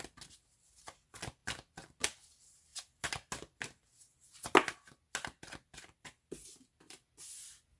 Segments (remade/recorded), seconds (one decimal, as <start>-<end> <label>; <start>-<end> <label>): 0.0-7.8 recorded